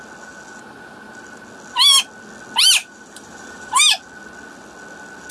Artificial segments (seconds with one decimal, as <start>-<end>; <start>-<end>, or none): 2.8-3.8